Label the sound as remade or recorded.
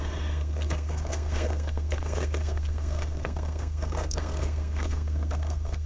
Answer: remade